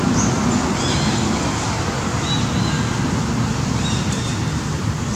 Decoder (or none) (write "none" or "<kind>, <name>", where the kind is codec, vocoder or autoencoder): none